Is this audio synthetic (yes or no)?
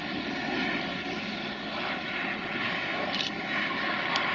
no